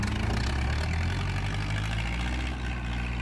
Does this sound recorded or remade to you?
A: recorded